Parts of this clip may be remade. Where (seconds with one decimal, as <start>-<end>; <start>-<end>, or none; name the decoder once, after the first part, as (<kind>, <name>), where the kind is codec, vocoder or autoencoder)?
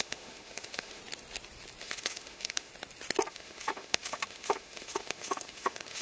0.0-1.0 (autoencoder, DAC-VAE); 1.8-2.7; 3.3-6.0